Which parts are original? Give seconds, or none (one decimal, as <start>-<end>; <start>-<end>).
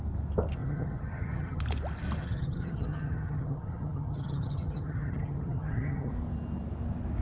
0.0-0.6; 1.6-2.2; 6.1-7.2